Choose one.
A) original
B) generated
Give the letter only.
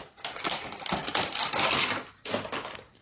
A